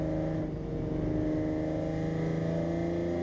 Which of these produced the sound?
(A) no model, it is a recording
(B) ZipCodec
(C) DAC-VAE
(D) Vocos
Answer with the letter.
A